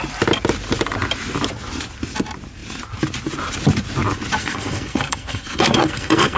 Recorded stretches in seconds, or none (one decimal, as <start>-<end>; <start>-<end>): 0.0-4.4